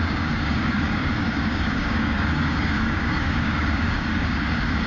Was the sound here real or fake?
fake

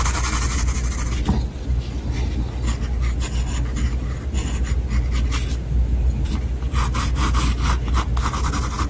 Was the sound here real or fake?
real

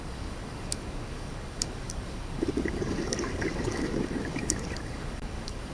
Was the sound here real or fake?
fake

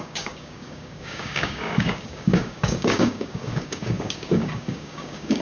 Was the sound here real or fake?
fake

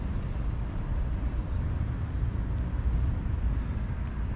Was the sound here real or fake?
real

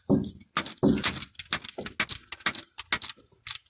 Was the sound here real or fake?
real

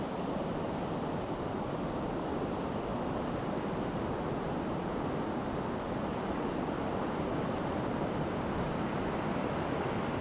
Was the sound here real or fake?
real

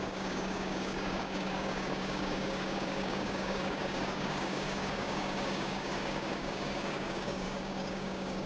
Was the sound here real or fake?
fake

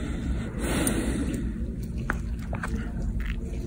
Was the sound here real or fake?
real